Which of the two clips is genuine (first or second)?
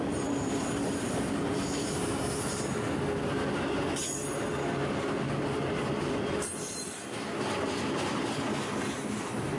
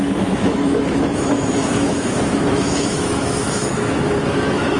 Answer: first